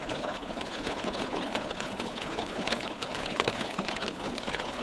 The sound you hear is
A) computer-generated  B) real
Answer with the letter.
A